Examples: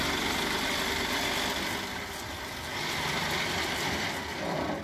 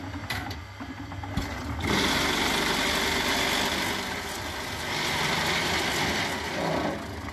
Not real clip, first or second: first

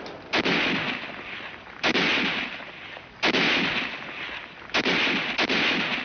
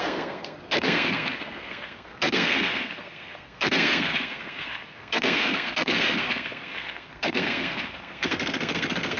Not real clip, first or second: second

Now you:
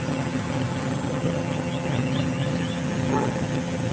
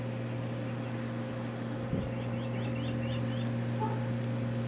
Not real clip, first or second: first